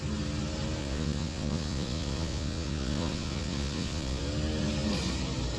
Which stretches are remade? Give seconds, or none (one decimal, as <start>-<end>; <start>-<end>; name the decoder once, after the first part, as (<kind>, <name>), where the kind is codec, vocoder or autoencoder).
0.8-4.2 (vocoder, Vocos)